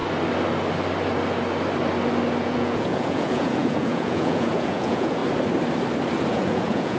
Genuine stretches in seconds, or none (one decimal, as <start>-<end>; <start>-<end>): 0.0-2.4; 5.2-6.3